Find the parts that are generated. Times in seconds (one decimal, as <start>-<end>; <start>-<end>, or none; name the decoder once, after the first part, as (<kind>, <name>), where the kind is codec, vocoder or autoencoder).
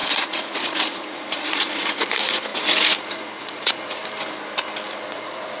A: 0.0-4.0 (vocoder, Vocos); 4.9-5.6